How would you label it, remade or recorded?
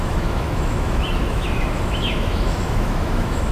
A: remade